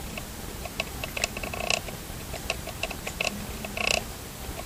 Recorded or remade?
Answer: recorded